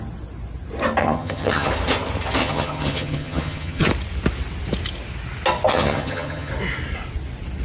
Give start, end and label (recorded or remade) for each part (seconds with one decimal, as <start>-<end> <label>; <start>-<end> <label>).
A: 0.0-1.0 recorded; 1.0-1.7 remade; 1.7-2.4 recorded; 2.4-3.9 remade; 3.9-5.7 recorded; 5.7-6.5 remade; 6.5-7.6 recorded